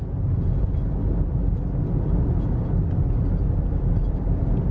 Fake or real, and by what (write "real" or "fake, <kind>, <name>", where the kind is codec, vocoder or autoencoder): real